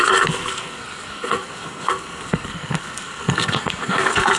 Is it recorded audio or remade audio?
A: remade